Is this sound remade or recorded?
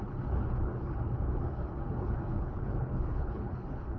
remade